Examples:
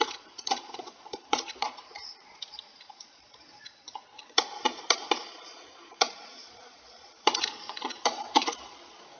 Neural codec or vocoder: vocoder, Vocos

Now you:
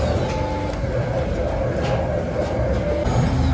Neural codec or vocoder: none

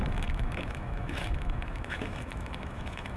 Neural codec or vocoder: autoencoder, DAC-VAE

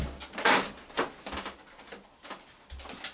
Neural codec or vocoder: none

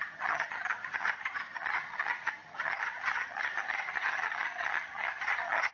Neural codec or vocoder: vocoder, HiFi-GAN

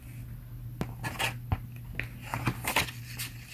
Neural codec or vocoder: none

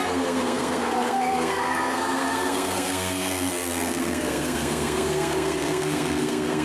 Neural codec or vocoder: codec, SNAC